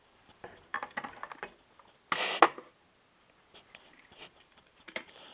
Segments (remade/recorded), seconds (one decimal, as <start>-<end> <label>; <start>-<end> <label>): 0.0-0.7 remade; 0.7-3.9 recorded; 3.9-5.3 remade